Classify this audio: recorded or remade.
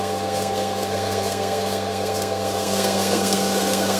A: remade